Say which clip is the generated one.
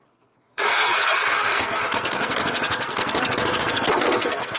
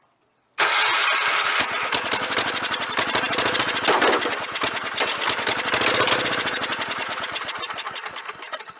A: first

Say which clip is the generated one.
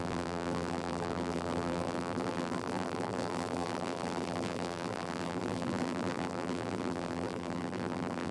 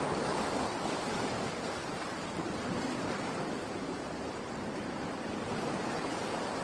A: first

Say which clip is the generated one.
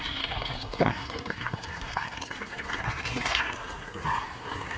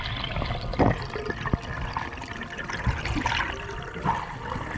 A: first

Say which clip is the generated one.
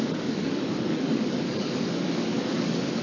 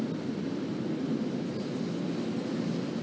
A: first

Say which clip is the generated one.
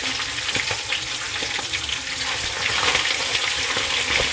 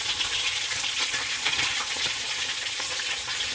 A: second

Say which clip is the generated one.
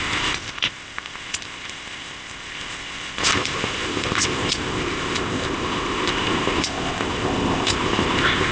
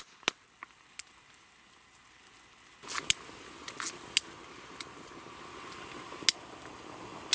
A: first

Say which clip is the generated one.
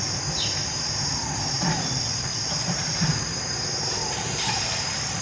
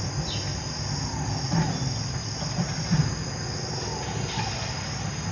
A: first